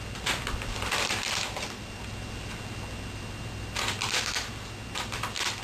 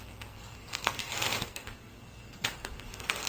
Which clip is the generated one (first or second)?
second